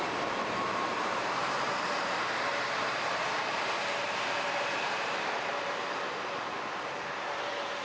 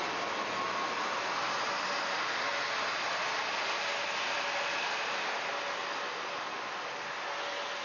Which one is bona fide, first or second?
second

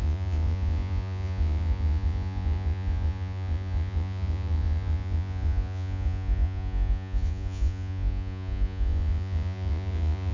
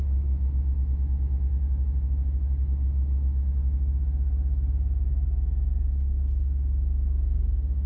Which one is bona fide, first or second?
second